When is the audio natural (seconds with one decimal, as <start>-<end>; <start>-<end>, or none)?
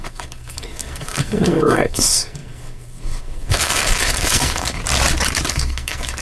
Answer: 4.8-5.5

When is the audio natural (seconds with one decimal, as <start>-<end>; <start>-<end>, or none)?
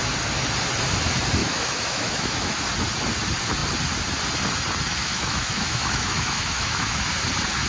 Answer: 0.0-1.4; 2.7-4.9; 7.1-7.7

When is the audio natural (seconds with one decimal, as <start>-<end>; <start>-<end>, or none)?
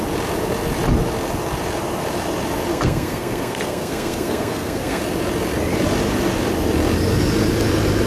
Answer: 0.0-2.7; 5.0-8.1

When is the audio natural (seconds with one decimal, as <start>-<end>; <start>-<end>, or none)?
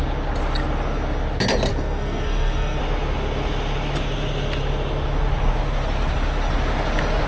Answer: 0.0-1.7; 2.8-7.3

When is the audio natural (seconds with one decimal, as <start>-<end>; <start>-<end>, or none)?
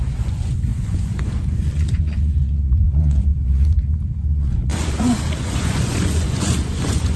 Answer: none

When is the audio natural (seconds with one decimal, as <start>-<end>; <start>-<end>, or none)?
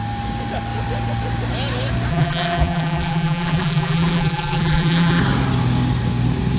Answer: 0.0-2.1; 5.2-6.6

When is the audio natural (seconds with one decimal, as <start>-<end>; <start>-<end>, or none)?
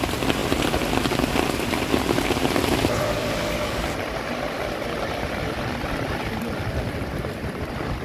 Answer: none